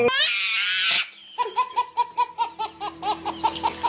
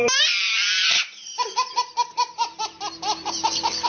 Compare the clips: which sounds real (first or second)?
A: first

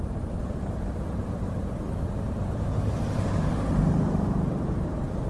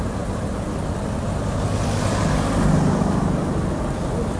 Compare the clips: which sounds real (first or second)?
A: second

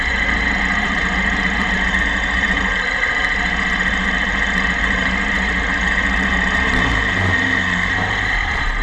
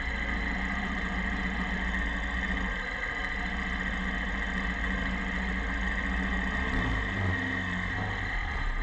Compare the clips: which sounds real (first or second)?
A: second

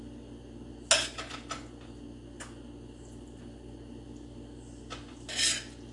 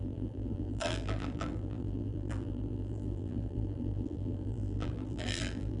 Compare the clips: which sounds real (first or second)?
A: first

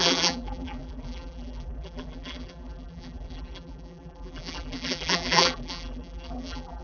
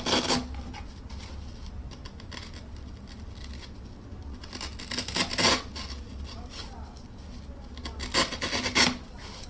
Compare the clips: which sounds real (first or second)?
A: second